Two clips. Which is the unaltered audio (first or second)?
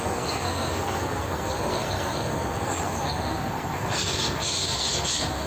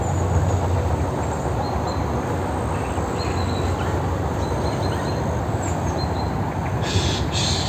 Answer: second